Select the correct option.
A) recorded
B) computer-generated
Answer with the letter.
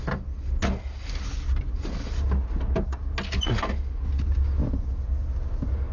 A